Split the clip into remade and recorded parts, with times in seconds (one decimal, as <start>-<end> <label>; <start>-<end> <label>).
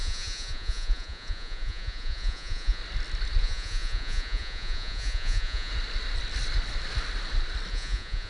0.0-2.8 remade; 2.8-3.4 recorded; 3.4-5.7 remade; 5.7-7.7 recorded; 7.7-8.3 remade